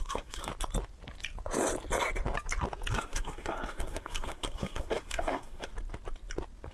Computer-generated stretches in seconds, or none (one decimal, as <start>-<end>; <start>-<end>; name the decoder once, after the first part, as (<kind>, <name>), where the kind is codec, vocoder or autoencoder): 0.0-0.5 (codec, SNAC); 2.9-5.7